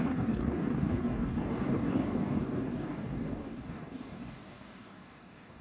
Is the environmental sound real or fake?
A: fake